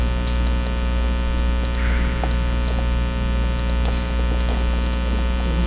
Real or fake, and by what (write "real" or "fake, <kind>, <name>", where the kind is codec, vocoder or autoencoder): real